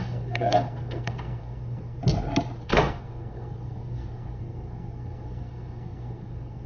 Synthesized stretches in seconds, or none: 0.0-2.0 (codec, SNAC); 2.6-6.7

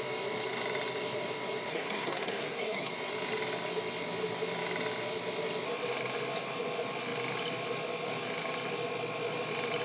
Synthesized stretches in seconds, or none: 1.7-2.9 (codec, SNAC)

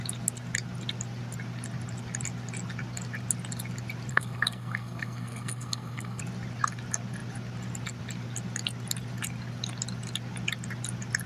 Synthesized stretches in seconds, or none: 4.1-6.2 (codec, SNAC)

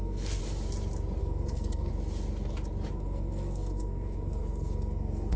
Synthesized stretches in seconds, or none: 0.0-0.4 (codec, SNAC); 1.2-1.9; 2.9-5.4